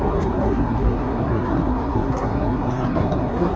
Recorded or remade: remade